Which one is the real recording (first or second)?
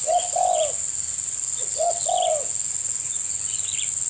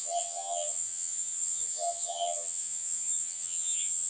first